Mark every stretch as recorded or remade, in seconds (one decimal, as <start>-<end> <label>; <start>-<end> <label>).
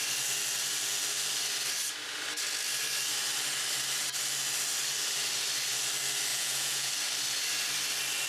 0.0-6.3 recorded; 6.3-6.9 remade; 6.9-8.3 recorded